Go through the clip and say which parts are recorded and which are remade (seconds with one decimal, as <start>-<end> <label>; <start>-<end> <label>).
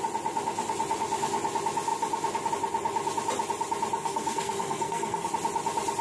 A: 0.0-4.0 recorded; 4.0-5.3 remade; 5.3-6.0 recorded